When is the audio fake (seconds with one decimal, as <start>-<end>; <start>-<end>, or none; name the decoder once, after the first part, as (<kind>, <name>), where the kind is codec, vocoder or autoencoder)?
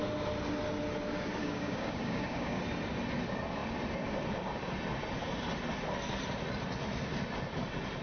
1.4-2.6 (codec, DAC)